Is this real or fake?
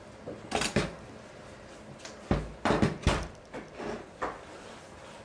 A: real